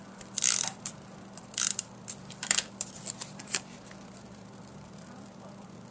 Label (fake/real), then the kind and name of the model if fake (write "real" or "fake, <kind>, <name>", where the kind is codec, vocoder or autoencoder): fake, vocoder, BigVGAN v2